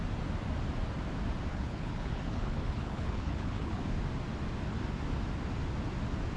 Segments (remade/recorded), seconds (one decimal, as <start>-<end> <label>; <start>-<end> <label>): 0.0-1.5 recorded; 1.5-3.8 remade; 3.8-6.4 recorded